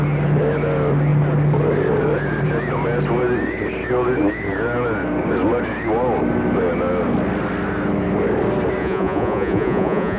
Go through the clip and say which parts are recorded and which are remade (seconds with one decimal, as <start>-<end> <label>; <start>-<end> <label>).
0.0-8.8 recorded; 8.8-10.2 remade